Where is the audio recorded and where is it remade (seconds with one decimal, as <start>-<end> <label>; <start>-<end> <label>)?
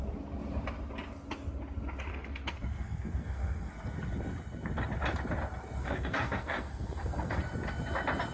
0.0-2.1 recorded; 2.1-3.7 remade; 3.7-5.8 recorded; 5.8-7.4 remade; 7.4-8.3 recorded